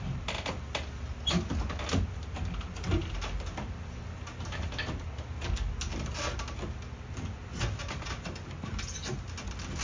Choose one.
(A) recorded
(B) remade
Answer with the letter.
A